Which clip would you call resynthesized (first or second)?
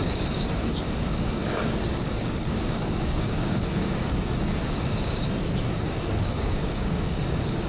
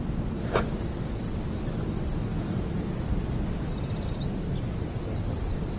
first